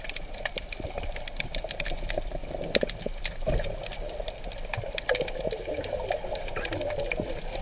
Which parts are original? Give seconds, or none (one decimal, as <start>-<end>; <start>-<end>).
0.0-7.6